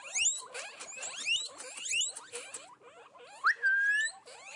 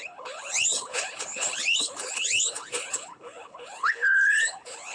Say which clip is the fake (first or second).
second